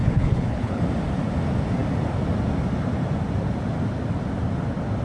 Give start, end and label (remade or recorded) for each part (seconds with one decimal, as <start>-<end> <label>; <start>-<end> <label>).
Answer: 0.0-0.8 remade; 0.8-5.0 recorded